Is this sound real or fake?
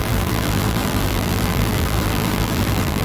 fake